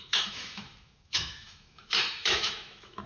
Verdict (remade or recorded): remade